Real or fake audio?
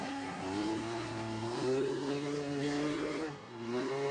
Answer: fake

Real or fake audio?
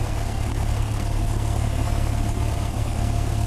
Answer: fake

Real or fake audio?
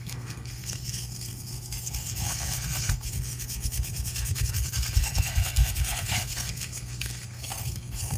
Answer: fake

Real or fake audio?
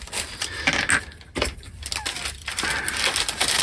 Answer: real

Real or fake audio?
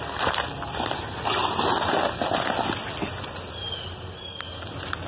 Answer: real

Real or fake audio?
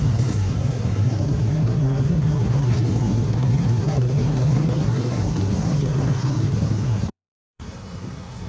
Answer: fake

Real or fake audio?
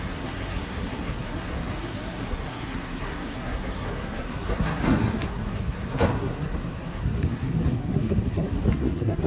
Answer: fake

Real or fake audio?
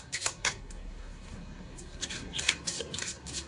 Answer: fake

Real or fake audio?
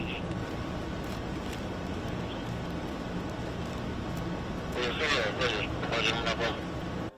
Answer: real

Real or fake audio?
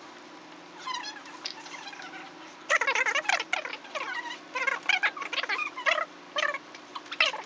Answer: real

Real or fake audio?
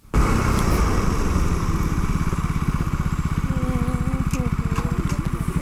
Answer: real